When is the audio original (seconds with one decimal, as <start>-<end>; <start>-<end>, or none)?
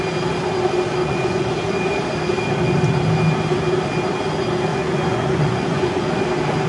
0.0-1.0; 1.5-4.7; 6.1-6.7